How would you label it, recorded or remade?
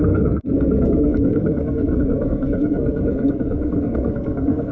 remade